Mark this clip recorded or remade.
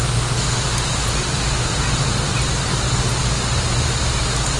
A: recorded